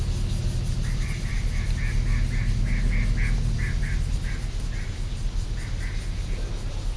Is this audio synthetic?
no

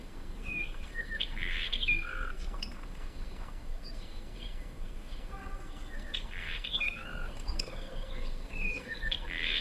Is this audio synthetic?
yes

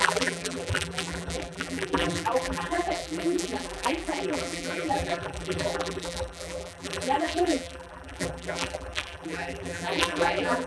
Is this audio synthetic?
yes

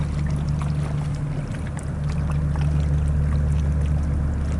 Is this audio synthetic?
no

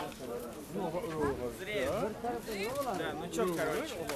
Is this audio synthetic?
no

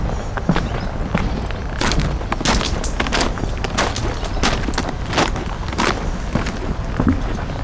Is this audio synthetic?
no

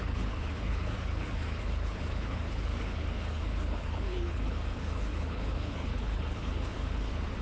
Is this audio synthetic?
yes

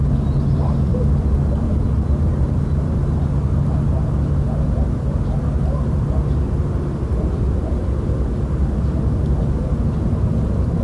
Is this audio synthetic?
no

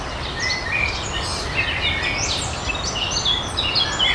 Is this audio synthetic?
no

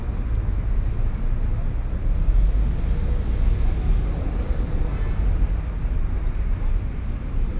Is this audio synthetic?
no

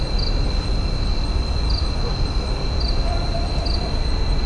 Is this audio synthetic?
no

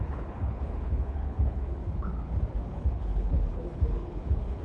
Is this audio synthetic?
yes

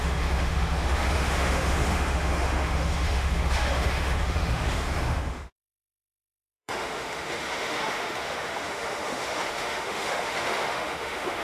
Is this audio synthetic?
yes